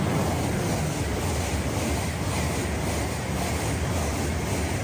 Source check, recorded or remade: recorded